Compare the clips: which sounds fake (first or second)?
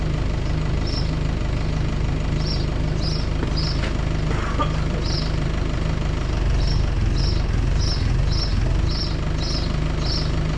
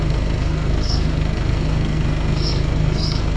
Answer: second